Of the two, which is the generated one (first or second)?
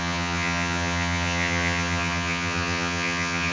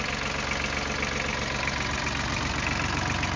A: first